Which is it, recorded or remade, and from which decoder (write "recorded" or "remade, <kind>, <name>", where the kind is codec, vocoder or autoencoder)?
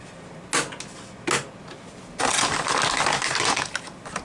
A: recorded